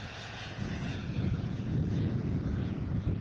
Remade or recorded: remade